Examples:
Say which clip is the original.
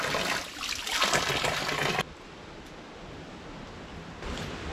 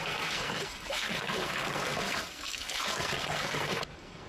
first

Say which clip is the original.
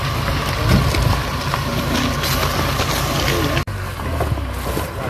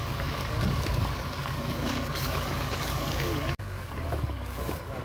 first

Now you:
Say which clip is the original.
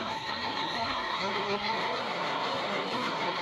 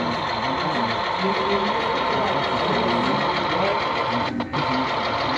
second